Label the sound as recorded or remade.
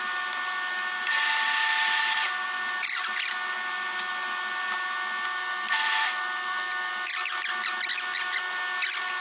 recorded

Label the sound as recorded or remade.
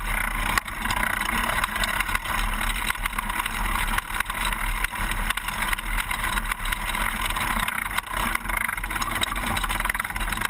recorded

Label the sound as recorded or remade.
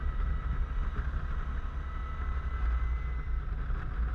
recorded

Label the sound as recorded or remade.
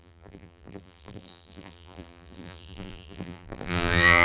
remade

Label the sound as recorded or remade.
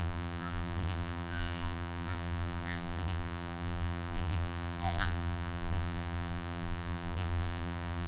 remade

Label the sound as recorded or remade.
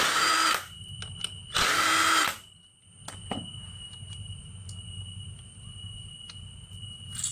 recorded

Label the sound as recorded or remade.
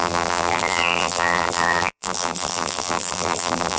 remade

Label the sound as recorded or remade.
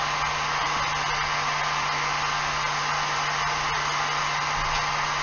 recorded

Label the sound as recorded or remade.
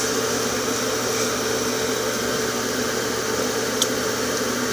recorded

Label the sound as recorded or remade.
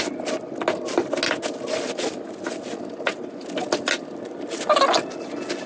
recorded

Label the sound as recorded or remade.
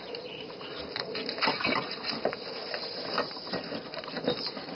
remade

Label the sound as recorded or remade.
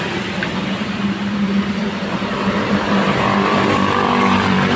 remade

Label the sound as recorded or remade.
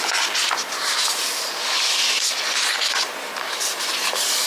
recorded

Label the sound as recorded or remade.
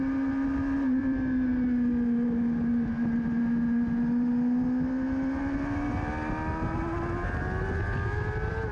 recorded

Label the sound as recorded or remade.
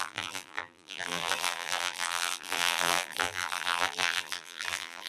remade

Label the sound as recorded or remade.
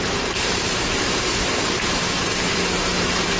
remade